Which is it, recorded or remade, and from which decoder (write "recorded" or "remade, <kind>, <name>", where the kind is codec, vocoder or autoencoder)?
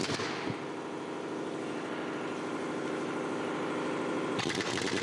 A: recorded